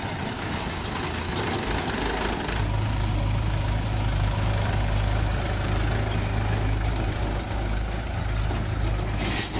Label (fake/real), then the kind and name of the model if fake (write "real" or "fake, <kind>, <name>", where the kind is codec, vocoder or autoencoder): real